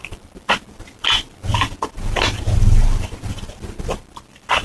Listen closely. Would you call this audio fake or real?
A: real